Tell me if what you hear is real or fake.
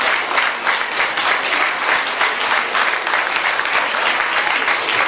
real